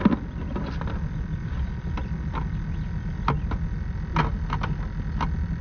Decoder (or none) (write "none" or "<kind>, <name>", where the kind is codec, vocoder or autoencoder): none